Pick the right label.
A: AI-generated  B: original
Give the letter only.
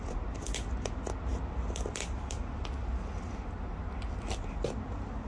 B